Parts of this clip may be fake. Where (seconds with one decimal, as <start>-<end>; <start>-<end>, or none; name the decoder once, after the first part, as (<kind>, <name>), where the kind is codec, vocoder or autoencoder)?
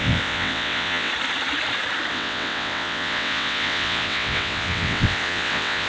0.0-1.1 (vocoder, WaveNeXt); 2.1-5.9